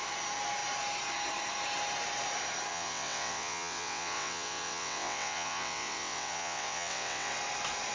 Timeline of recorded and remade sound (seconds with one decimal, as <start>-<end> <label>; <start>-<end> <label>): 0.0-2.7 recorded; 2.7-7.3 remade; 7.3-7.9 recorded